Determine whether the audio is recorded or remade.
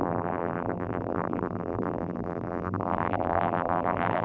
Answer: remade